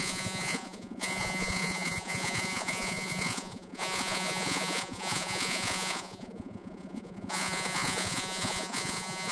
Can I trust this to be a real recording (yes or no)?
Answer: no